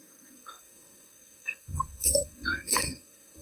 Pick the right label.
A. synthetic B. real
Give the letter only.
A